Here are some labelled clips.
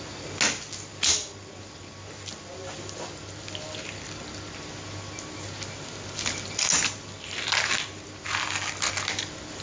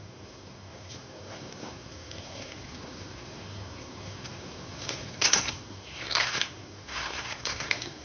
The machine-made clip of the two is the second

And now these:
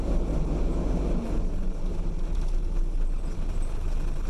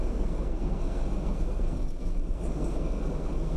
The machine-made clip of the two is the second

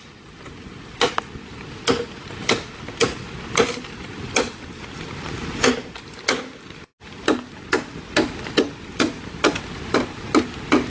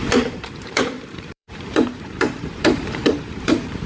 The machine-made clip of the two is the second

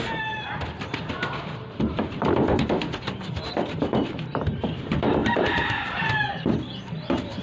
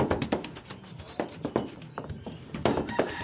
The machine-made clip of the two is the first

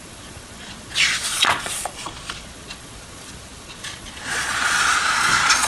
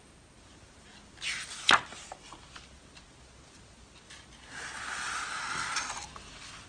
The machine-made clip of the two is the first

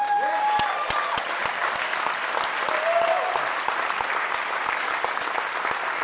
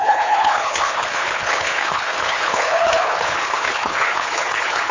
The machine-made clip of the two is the second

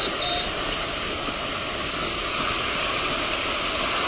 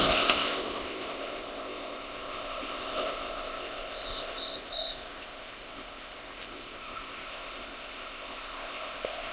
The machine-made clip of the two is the second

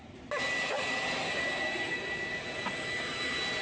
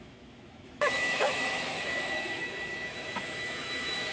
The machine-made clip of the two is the second